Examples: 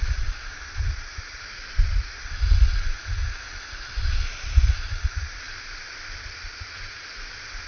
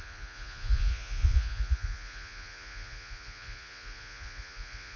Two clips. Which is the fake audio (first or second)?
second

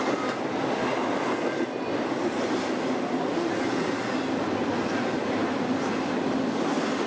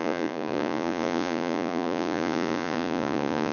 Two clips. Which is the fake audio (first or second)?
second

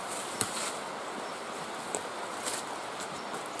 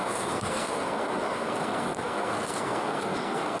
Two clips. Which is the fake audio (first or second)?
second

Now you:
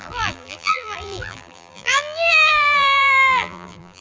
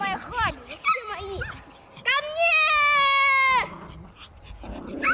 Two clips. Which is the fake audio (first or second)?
first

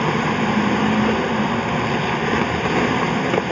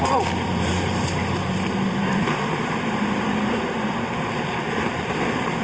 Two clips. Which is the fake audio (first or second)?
second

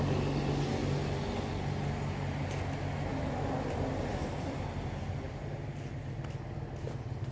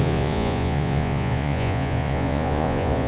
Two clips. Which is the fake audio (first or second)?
second